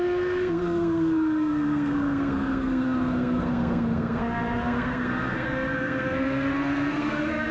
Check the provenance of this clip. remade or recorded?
remade